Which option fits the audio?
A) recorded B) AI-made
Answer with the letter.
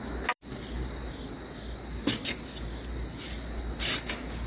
A